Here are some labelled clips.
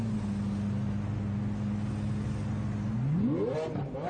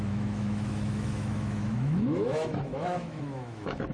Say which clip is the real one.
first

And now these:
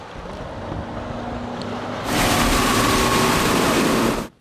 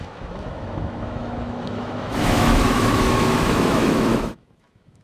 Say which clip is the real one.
first